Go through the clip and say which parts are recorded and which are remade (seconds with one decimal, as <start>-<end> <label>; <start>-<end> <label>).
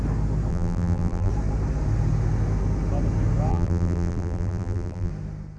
0.0-0.5 recorded; 0.5-1.3 remade; 1.3-3.5 recorded; 3.5-5.1 remade; 5.1-5.6 recorded